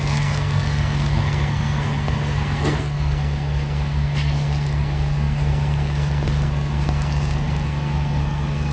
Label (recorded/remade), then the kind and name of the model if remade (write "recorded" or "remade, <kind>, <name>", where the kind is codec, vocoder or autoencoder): remade, codec, SNAC